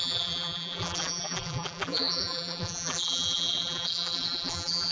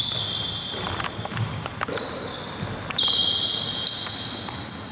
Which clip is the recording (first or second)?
second